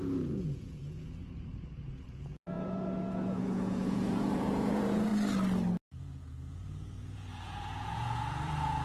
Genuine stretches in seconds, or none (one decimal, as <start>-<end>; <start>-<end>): 5.1-6.0